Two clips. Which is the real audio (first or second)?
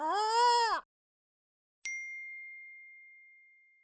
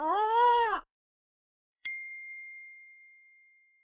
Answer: first